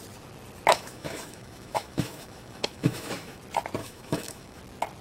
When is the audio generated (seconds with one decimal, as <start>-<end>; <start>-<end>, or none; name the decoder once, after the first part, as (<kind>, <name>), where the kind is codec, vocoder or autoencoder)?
0.7-3.4 (autoencoder, DAC-VAE); 3.8-4.6